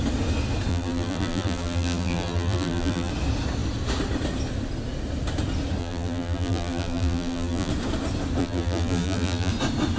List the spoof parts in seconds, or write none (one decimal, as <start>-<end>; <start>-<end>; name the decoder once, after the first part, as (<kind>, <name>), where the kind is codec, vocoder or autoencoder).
0.7-3.1 (vocoder, BigVGAN v2); 5.8-7.7; 8.4-9.5